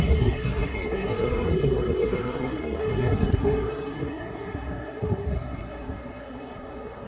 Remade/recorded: remade